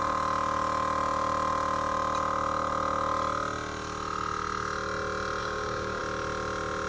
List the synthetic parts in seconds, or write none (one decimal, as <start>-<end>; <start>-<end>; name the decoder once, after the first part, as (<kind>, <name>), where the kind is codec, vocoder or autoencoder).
5.4-6.0 (codec, DAC)